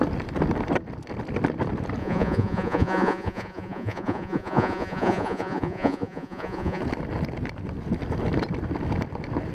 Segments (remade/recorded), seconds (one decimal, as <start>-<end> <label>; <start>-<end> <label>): 0.0-2.0 recorded; 2.0-6.8 remade; 6.8-9.5 recorded